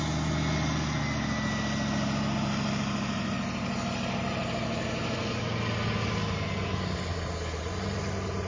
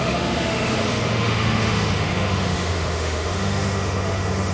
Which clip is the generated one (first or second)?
second